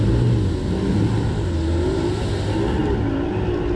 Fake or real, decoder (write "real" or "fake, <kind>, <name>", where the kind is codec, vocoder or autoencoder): real